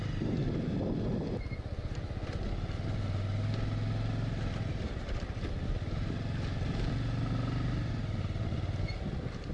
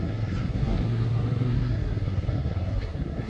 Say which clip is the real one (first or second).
first